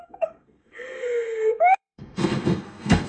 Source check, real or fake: fake